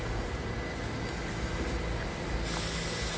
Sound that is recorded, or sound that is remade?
recorded